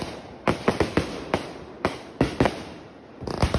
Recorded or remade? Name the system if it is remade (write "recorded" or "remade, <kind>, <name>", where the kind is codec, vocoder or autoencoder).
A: recorded